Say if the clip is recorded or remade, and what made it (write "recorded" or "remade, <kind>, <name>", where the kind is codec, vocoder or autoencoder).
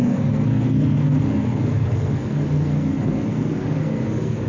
remade, codec, SNAC